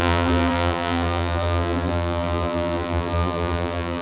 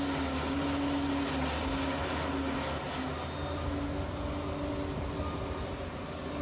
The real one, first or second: second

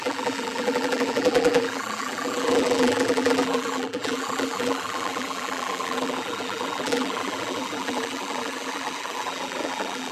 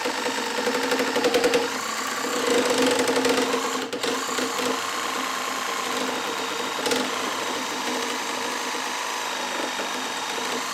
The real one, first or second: second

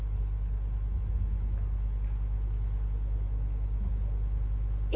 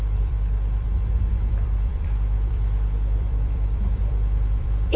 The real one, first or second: first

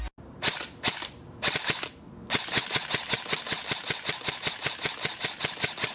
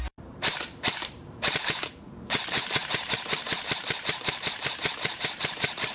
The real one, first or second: first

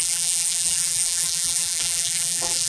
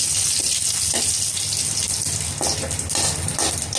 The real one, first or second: second